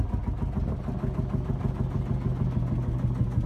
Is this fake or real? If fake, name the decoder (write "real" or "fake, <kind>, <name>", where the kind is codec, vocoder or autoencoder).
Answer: real